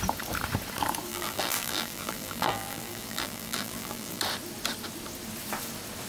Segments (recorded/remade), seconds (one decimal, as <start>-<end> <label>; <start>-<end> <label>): 0.0-1.1 recorded; 1.1-4.2 remade; 4.2-6.1 recorded